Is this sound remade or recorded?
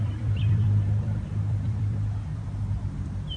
remade